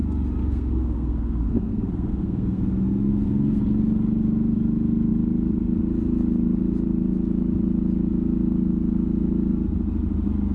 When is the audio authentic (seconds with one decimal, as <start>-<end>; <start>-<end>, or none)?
0.0-0.4; 3.6-10.5